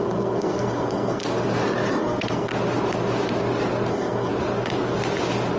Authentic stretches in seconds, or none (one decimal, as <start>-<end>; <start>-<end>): 1.2-1.9; 2.5-3.9; 4.3-5.6